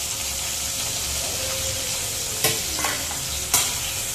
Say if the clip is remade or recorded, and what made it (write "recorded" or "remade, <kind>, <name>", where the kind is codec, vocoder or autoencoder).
recorded